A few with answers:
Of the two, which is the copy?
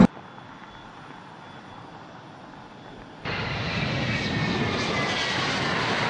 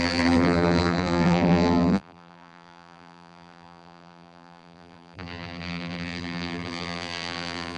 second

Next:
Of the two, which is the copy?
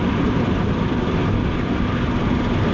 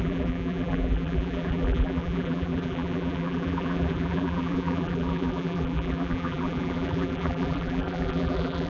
second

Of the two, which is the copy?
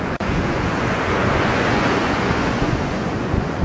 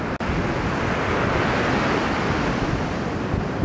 first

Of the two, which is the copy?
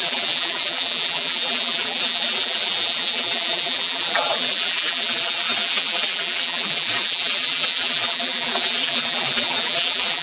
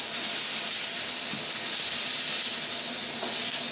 first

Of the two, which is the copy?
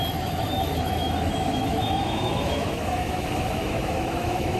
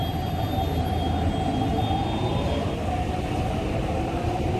first